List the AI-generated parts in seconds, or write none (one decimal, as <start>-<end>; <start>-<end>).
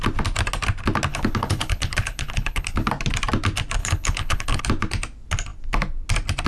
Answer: 1.1-2.9; 3.8-4.6